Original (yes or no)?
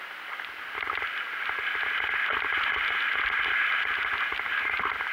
yes